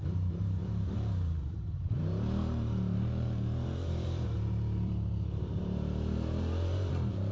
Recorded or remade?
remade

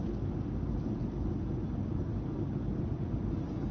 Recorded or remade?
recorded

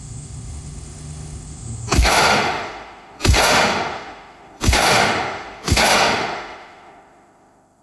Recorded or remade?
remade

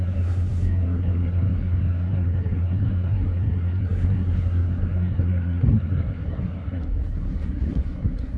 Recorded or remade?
remade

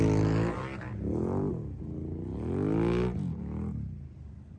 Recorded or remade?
recorded